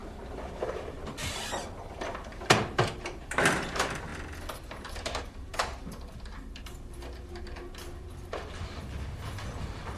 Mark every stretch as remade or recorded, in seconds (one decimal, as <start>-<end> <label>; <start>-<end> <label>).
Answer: 0.0-10.0 recorded